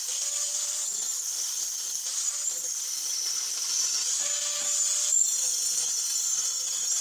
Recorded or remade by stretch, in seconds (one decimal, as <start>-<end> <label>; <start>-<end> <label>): 0.0-7.0 recorded